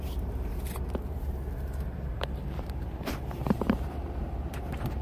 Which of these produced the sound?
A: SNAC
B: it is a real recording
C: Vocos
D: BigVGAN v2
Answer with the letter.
D